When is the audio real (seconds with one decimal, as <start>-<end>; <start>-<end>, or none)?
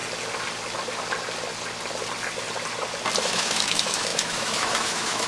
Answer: 0.0-3.2